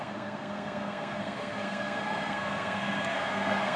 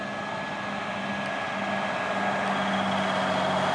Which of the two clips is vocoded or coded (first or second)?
first